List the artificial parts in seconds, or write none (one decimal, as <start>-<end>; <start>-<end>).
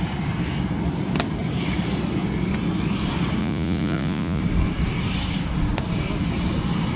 3.4-4.4